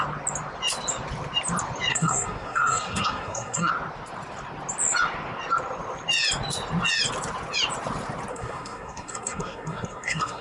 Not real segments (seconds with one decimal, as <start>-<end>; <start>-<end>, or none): 1.9-3.7; 8.3-10.4